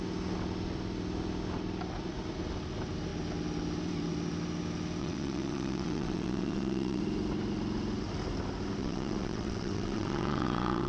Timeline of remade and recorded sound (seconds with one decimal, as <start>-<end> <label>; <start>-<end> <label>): 0.0-5.0 recorded; 5.0-7.0 remade; 7.0-8.8 recorded; 8.8-10.9 remade